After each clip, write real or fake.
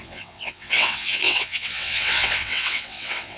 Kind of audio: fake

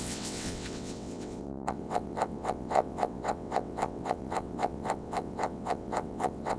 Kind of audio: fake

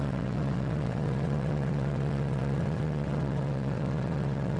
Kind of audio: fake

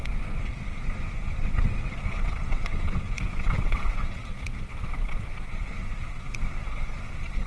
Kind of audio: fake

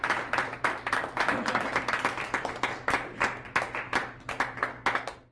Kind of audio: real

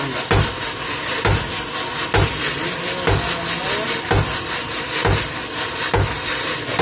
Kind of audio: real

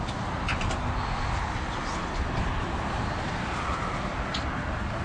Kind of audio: real